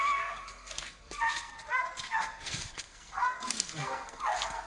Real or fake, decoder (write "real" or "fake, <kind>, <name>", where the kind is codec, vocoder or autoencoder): fake, codec, SNAC